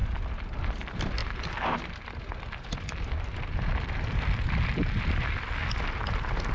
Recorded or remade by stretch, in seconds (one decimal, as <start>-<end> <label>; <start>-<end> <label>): 0.0-1.2 recorded; 1.2-5.1 remade; 5.1-6.5 recorded